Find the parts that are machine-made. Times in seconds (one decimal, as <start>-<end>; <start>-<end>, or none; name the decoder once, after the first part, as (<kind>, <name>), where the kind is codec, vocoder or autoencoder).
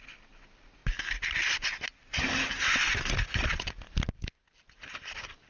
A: none